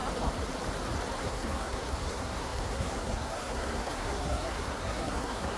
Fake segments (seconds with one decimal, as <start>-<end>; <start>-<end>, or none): 1.2-5.6